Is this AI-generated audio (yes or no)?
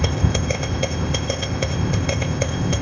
yes